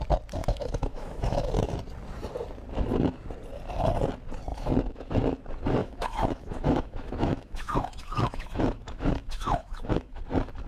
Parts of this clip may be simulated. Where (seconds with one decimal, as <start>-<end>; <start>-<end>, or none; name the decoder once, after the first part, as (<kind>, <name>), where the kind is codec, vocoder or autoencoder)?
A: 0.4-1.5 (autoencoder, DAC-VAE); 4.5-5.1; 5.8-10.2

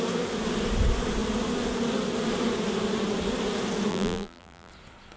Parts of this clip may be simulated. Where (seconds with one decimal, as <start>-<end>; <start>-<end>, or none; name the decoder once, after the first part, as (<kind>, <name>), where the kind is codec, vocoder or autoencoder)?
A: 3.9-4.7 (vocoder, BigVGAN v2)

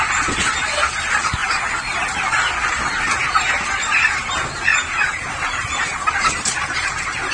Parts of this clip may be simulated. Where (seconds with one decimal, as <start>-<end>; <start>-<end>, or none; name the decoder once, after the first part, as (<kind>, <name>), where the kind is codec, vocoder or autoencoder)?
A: 4.8-7.3 (vocoder, BigVGAN v2)

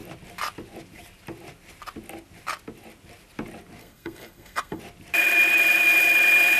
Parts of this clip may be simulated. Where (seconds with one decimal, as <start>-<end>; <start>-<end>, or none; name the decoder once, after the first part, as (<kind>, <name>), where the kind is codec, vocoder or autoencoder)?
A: 3.8-4.8 (codec, SNAC)

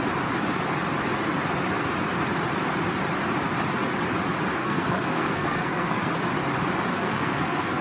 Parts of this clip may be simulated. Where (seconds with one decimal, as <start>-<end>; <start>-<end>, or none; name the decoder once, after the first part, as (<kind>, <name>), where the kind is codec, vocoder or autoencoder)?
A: 4.6-6.1 (codec, SNAC); 6.9-7.8

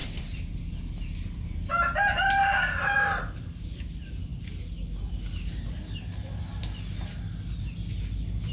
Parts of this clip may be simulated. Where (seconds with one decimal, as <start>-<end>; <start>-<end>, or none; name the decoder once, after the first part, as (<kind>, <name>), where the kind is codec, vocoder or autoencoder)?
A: none

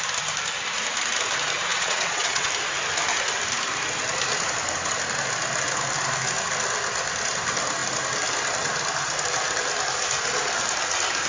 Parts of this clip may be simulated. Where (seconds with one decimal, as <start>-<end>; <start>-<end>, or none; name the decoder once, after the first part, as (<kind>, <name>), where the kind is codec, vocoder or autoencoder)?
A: 1.7-2.5 (vocoder, WaveNeXt)

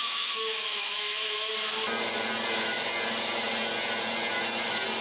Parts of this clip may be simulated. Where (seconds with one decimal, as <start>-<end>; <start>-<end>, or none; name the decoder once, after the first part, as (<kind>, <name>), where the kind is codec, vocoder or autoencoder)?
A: 0.0-1.5 (autoencoder, DAC-VAE)